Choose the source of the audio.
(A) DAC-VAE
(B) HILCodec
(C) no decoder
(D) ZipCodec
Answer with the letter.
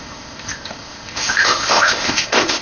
D